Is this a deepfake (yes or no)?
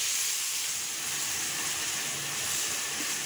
no